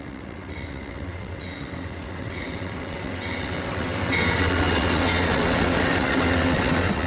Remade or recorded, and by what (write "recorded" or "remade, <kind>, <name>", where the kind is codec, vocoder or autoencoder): remade, vocoder, WaveNeXt